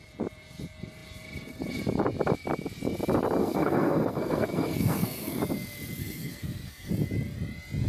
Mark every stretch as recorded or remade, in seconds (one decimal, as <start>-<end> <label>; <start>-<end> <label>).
0.0-3.4 recorded; 3.4-5.4 remade; 5.4-6.0 recorded; 6.0-6.9 remade; 6.9-7.9 recorded